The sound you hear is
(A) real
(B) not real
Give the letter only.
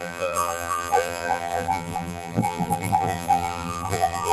B